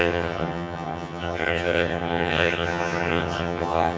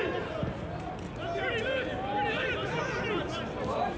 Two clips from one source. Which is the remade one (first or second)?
first